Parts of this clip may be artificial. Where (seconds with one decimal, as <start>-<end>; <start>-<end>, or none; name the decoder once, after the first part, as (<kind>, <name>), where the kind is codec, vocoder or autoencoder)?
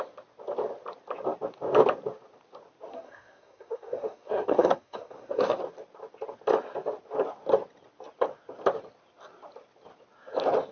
2.9-5.6 (codec, SNAC)